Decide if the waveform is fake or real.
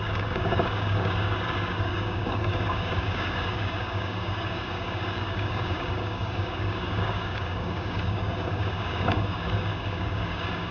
fake